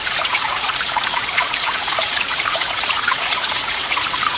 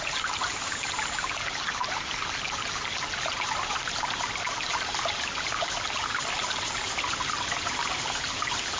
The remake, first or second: first